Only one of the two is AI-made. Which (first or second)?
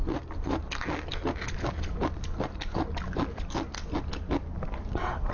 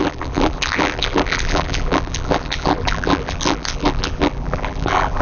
second